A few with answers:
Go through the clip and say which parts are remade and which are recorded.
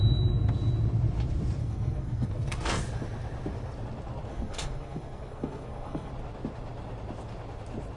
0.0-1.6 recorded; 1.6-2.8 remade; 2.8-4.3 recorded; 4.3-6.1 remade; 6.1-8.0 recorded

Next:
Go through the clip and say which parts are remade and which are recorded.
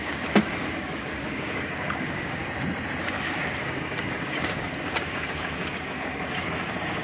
0.0-2.4 remade; 2.4-3.0 recorded; 3.0-7.0 remade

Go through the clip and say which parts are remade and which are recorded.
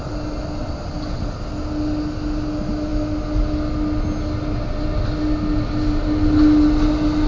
0.0-7.3 recorded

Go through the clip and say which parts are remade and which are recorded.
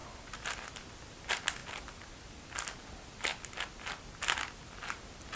0.0-5.4 recorded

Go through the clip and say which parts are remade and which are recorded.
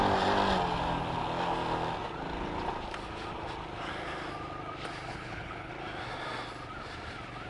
0.0-5.1 recorded; 5.1-5.7 remade; 5.7-7.5 recorded